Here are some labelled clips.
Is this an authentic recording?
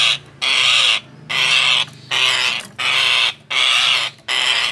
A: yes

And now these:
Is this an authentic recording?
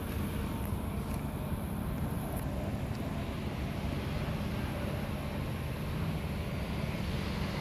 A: yes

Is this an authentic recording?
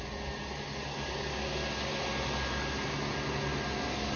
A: yes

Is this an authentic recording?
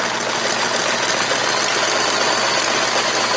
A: yes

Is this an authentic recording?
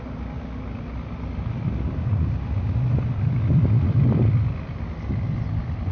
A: yes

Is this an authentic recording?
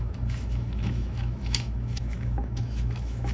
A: no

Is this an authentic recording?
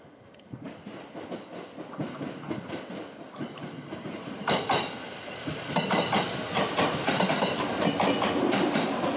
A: yes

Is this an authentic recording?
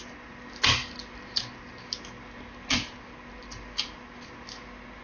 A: yes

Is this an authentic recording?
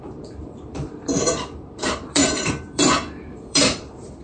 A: no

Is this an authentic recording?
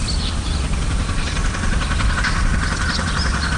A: yes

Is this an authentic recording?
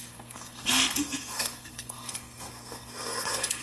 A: no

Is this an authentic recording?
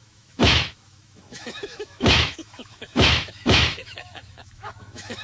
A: no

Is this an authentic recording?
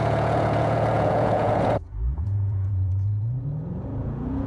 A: no